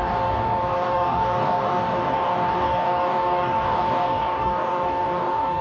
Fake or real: fake